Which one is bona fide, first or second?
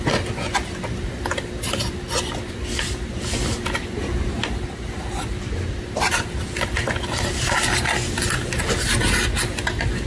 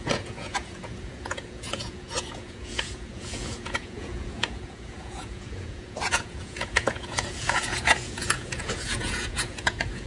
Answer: first